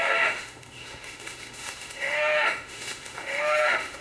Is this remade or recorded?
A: remade